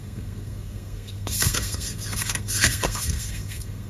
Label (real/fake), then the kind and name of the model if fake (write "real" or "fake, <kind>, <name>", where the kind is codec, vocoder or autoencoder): fake, codec, SNAC